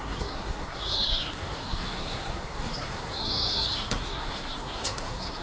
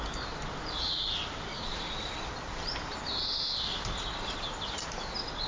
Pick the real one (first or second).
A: second